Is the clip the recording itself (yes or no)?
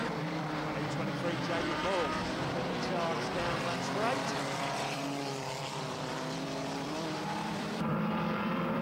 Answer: no